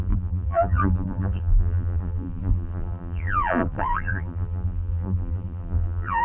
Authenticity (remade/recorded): remade